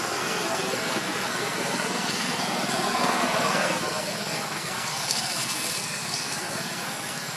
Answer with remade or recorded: remade